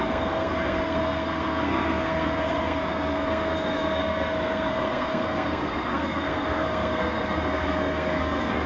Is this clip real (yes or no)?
no